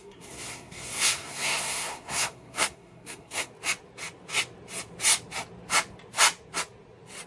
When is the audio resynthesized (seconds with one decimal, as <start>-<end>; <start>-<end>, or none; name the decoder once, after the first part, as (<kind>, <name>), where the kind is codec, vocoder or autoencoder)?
0.0-3.5 (codec, SNAC)